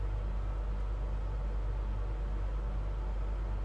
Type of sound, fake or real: real